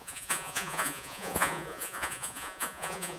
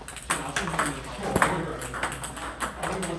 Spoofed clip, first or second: first